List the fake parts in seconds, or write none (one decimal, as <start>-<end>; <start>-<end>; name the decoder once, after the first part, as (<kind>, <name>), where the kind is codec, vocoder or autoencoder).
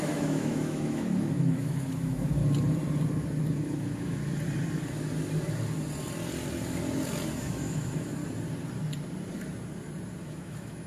0.0-2.4 (autoencoder, DAC-VAE); 3.5-4.2; 7.4-8.2; 10.2-10.9